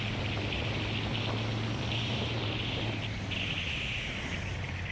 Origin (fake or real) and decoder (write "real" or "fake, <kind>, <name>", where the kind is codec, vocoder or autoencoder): real